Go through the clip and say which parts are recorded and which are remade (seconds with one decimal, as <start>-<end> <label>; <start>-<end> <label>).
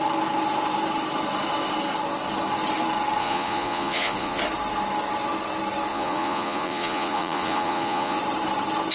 0.0-3.2 recorded; 3.2-4.4 remade; 4.4-5.9 recorded; 5.9-8.2 remade; 8.2-8.9 recorded